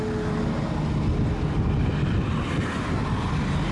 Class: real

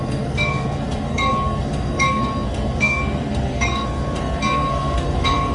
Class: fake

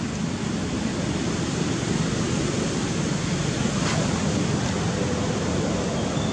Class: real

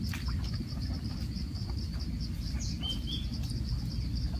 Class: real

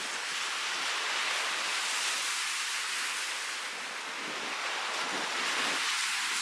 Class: real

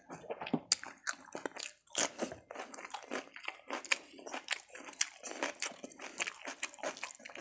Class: real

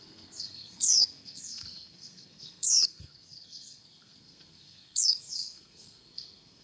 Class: fake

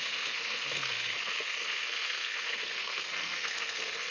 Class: fake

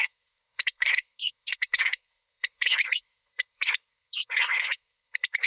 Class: fake